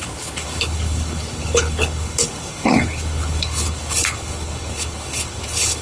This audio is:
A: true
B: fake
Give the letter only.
B